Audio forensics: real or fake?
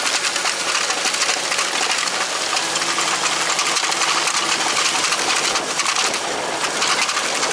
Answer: real